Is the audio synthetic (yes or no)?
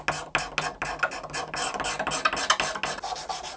no